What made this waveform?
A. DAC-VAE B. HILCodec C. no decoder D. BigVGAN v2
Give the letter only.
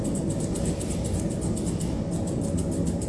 C